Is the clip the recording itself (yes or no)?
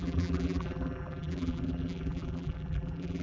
no